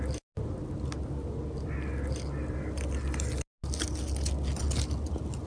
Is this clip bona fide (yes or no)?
yes